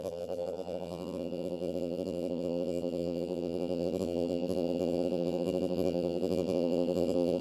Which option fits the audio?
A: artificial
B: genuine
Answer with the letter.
A